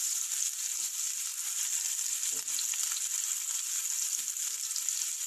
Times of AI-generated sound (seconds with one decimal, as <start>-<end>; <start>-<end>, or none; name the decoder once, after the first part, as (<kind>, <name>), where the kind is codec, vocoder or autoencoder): 0.0-1.3 (vocoder, BigVGAN v2); 4.5-5.3